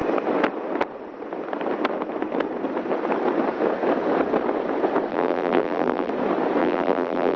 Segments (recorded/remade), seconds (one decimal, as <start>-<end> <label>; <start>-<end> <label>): 0.0-5.1 recorded; 5.1-6.1 remade; 6.1-6.6 recorded; 6.6-7.4 remade